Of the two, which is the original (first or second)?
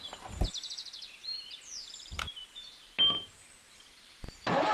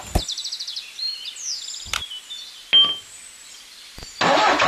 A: second